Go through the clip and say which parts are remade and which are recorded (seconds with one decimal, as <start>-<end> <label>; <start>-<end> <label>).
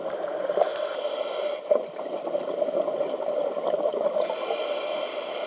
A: 0.0-5.5 recorded